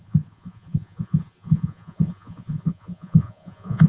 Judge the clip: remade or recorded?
remade